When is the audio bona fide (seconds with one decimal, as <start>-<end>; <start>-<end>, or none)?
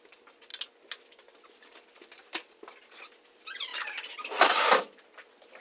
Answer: 0.0-5.6